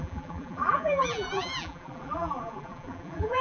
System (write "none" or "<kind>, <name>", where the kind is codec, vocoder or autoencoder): vocoder, BigVGAN v2